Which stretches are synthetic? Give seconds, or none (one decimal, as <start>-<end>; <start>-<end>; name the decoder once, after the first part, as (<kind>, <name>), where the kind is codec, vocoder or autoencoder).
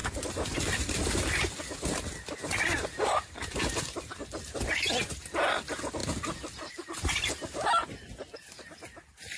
none